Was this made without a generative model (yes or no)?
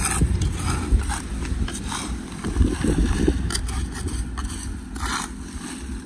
yes